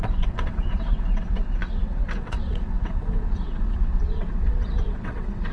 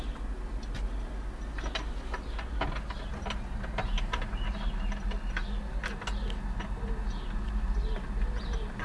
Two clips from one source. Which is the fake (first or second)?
first